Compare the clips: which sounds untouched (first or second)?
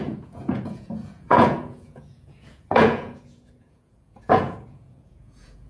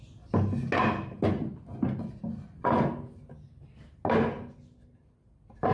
second